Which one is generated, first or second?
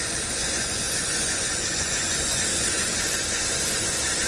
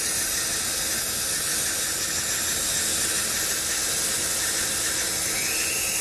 first